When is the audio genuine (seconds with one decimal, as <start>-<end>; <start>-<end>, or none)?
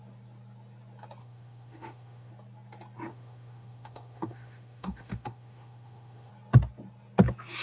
0.0-1.2; 2.3-3.1; 6.3-7.6